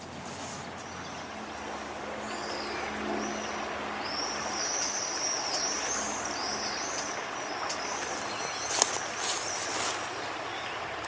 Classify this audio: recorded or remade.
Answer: recorded